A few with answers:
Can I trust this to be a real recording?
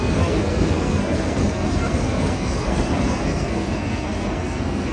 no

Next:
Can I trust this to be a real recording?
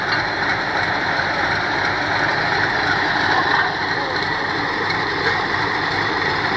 no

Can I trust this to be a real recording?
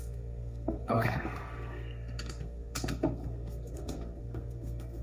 no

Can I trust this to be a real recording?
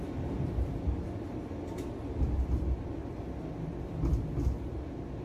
yes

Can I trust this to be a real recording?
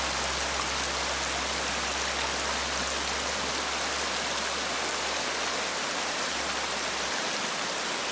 yes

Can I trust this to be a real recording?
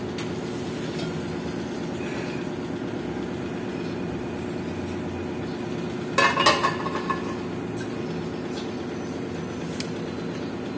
yes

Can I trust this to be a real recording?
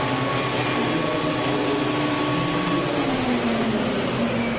yes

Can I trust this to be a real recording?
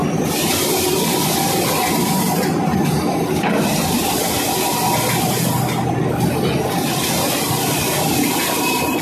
yes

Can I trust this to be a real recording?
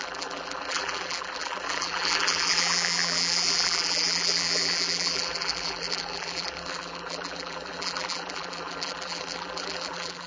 no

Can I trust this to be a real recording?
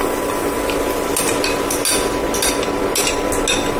yes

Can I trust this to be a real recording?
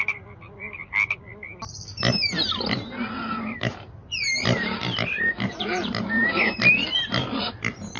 yes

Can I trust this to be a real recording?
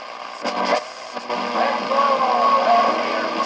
yes